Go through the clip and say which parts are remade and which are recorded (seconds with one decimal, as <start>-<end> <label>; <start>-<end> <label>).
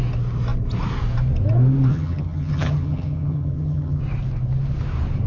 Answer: 0.0-1.9 recorded; 1.9-4.0 remade; 4.0-5.3 recorded